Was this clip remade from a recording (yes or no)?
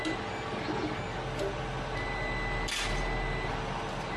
no